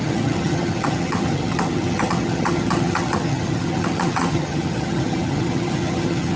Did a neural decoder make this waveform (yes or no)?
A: yes